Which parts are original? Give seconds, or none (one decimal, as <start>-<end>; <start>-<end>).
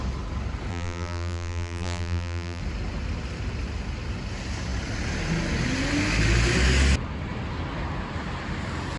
0.0-0.7; 2.6-9.0